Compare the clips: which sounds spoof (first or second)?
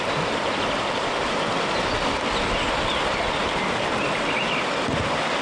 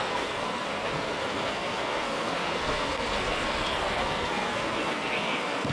second